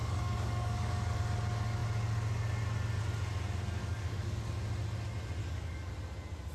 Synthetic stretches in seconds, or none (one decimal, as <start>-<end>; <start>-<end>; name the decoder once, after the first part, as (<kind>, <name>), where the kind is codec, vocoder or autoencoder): 0.0-1.2 (codec, DAC); 3.8-4.4; 5.4-5.9